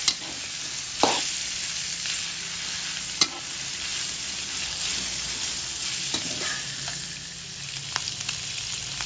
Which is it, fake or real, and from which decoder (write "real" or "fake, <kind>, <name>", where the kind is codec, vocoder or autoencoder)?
real